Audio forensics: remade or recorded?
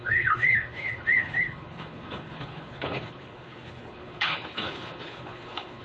remade